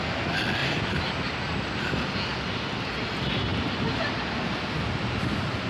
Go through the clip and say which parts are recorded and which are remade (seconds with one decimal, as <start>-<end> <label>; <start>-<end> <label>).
0.0-0.6 recorded; 0.6-1.1 remade; 1.1-5.7 recorded